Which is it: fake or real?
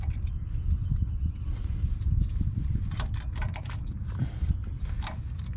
fake